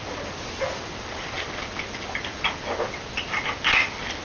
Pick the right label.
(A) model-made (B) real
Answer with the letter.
B